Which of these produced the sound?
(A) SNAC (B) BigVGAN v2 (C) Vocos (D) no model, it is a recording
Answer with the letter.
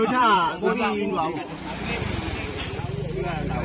B